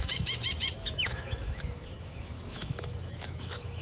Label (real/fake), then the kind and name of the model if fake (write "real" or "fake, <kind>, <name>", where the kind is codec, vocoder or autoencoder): fake, autoencoder, DAC-VAE